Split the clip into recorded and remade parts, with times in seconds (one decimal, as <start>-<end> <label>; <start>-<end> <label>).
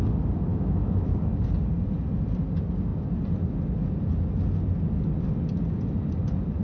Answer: 0.0-0.5 recorded; 0.5-1.2 remade; 1.2-6.6 recorded